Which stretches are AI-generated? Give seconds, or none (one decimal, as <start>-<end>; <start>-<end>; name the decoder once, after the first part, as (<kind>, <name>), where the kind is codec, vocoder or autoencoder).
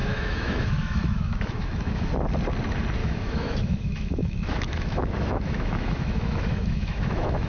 0.0-2.1 (autoencoder, DAC-VAE); 3.0-7.5